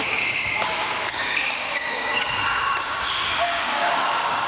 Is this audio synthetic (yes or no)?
yes